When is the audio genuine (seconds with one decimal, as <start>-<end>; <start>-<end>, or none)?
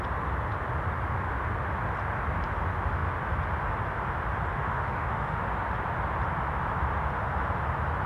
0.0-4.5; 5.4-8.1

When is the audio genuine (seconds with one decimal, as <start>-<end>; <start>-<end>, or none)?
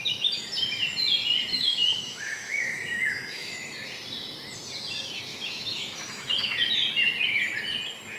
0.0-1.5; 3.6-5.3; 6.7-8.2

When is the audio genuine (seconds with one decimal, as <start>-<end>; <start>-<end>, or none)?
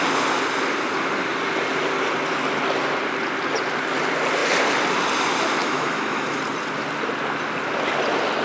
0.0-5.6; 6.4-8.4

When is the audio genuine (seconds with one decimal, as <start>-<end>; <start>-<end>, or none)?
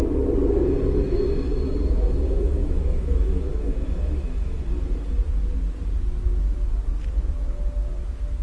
0.0-2.6; 4.6-8.4